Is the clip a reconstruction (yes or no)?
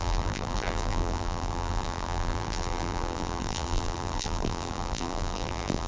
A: yes